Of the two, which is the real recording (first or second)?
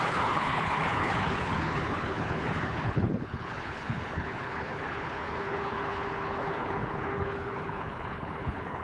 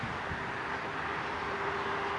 second